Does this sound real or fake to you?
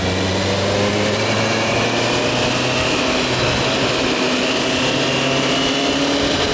real